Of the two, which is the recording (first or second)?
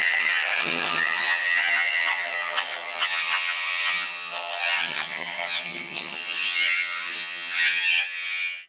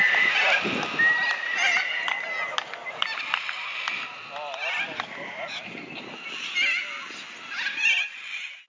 second